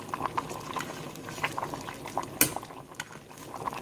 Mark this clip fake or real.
real